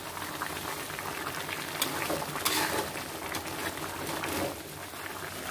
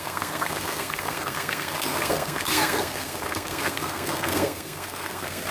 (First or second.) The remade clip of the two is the second